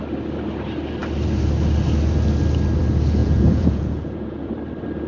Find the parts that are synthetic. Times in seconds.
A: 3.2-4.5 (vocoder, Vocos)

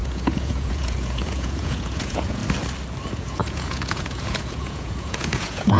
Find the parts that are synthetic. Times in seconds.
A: 0.0-2.4 (vocoder, Vocos); 3.1-5.8